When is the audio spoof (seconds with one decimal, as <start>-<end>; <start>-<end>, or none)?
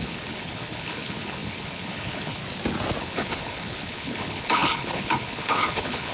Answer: 0.0-2.4; 3.0-6.1